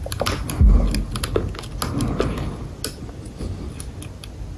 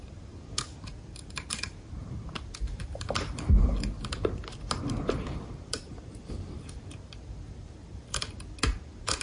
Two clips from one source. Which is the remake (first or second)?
second